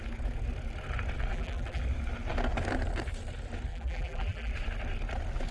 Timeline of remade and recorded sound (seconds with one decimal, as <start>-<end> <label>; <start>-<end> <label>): 0.0-1.3 recorded; 1.3-1.8 remade; 1.8-3.7 recorded; 3.7-4.5 remade; 4.5-5.5 recorded